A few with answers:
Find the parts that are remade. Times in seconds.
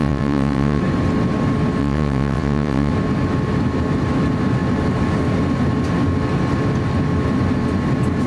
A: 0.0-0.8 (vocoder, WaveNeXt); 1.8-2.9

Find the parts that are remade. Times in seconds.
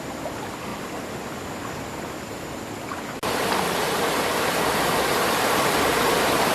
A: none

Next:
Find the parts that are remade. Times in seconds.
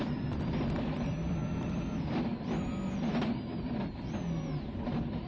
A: 0.0-5.3 (vocoder, BigVGAN v2)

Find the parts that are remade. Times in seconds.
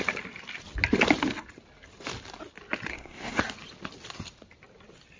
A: 2.9-3.4 (codec, SNAC)